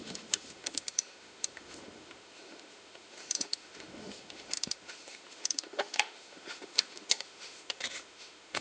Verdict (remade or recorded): remade